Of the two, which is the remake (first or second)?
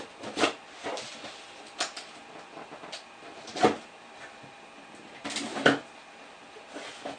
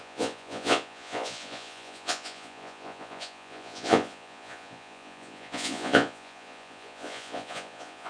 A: second